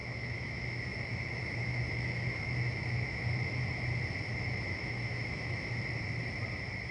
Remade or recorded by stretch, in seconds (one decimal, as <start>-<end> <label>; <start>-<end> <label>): 0.0-3.6 remade; 3.6-4.3 recorded; 4.3-5.7 remade; 5.7-6.9 recorded